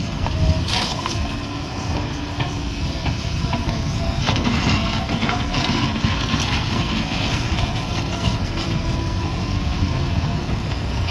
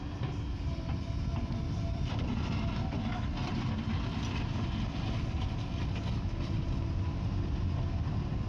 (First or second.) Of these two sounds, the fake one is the first